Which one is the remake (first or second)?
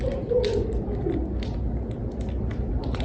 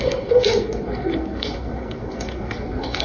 second